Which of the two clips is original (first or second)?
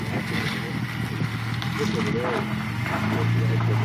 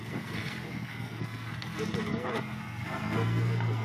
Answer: first